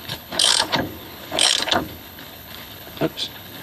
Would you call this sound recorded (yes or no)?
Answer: no